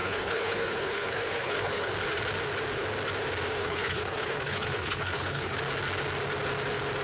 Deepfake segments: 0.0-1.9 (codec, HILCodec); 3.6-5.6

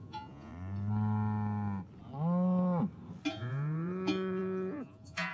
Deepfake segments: 0.0-0.5 (vocoder, Vocos); 3.3-5.3

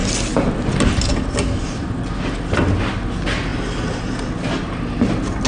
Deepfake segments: none

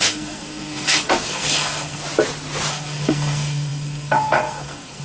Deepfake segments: 0.0-2.0 (codec, SNAC); 2.7-5.0

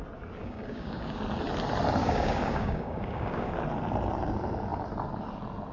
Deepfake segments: 0.4-1.2 (codec, DAC); 2.0-3.5